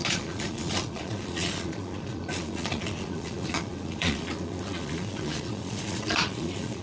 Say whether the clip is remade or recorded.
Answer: remade